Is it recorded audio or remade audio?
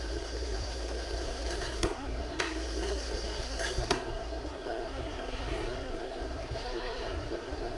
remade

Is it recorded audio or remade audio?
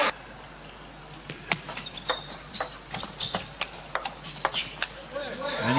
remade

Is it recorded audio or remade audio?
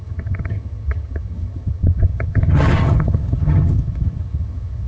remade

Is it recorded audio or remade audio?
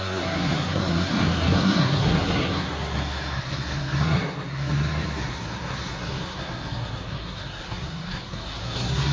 remade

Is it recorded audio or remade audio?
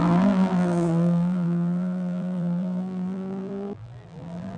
remade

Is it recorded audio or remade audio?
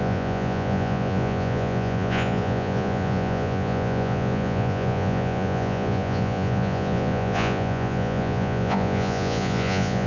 remade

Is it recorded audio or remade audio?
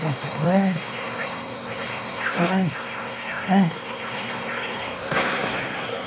remade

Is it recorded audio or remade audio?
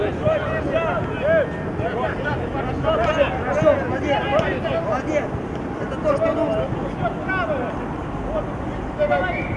recorded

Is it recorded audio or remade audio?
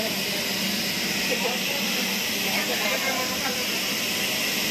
recorded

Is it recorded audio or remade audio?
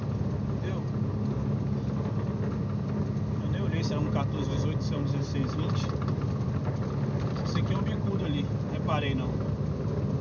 recorded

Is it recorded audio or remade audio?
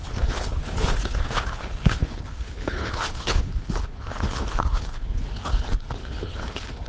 remade